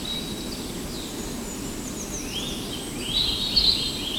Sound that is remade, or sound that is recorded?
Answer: recorded